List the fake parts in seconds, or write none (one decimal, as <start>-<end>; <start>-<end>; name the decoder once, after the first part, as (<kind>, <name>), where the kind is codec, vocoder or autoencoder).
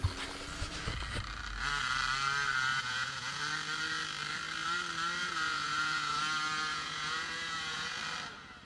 2.7-3.4 (vocoder, Vocos); 5.2-6.2; 6.7-8.0